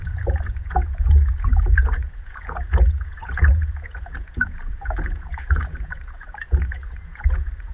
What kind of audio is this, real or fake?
fake